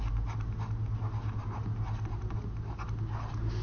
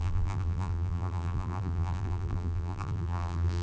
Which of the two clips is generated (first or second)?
second